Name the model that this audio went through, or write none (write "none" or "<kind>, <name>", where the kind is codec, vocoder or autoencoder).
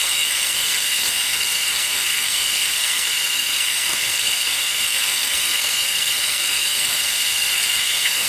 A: codec, SNAC